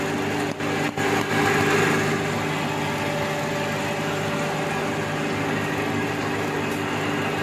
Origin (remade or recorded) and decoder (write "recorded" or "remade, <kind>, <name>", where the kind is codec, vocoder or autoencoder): recorded